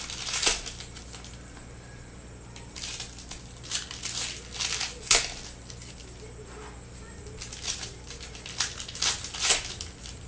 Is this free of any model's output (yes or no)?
yes